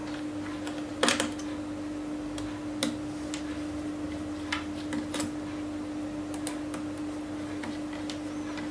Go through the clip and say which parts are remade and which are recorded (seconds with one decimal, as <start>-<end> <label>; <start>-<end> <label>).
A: 0.0-8.7 recorded